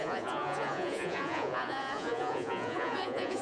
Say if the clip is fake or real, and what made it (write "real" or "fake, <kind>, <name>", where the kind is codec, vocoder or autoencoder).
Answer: fake, vocoder, Vocos